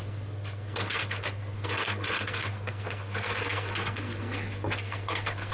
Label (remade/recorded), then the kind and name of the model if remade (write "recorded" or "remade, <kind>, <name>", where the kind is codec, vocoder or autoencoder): remade, codec, SNAC